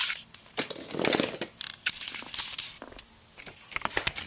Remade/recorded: recorded